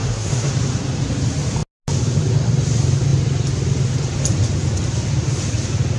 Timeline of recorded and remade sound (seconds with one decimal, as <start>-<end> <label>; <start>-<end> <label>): 0.0-0.5 remade; 0.5-6.0 recorded